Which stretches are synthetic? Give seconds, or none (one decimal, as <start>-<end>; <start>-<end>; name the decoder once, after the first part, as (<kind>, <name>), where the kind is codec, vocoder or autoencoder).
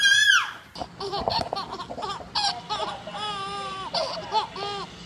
none